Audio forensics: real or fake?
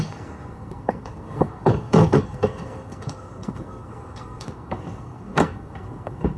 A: fake